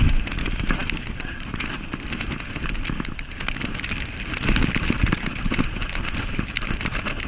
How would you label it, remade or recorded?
recorded